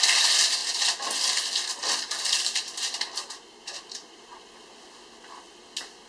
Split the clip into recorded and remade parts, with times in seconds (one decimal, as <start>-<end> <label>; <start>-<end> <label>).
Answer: 0.0-0.6 remade; 0.6-2.4 recorded; 2.4-4.3 remade; 4.3-6.1 recorded